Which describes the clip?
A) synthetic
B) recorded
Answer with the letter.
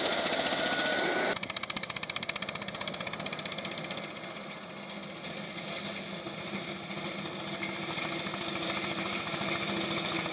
B